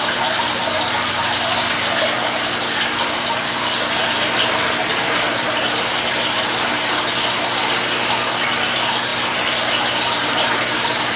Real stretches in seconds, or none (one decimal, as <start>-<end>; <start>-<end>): 0.0-11.2